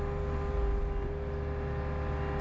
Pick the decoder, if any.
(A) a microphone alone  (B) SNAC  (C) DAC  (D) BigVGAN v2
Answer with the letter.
A